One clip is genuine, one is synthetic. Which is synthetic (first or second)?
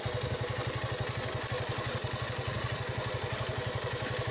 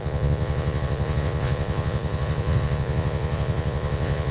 second